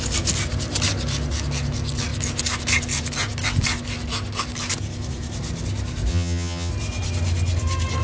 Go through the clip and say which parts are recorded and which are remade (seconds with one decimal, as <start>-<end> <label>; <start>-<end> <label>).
0.0-6.1 recorded; 6.1-6.7 remade; 6.7-8.0 recorded